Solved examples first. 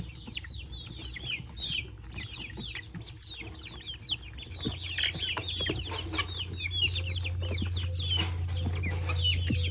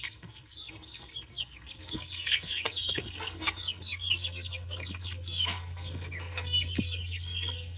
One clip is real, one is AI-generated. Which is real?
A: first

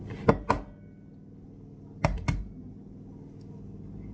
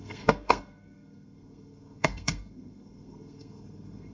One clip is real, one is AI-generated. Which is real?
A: first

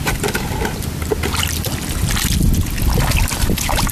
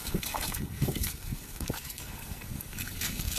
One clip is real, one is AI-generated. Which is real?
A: first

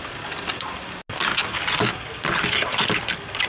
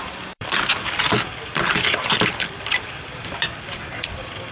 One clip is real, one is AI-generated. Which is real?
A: first